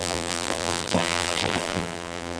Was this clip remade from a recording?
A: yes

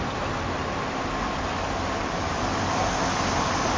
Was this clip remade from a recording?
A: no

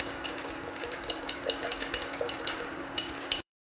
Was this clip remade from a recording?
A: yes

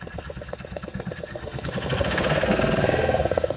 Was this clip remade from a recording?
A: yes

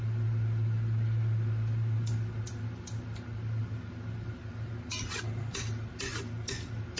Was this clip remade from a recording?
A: no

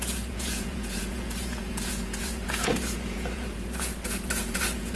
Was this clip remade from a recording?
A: yes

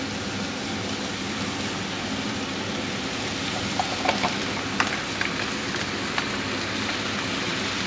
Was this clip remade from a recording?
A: no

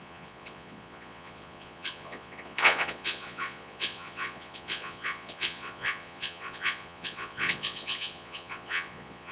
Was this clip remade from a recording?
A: yes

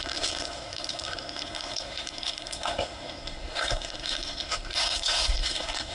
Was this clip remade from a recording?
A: yes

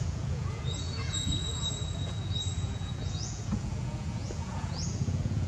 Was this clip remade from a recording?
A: yes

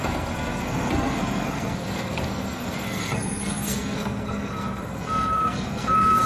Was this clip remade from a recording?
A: yes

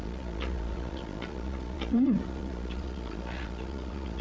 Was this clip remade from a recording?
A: yes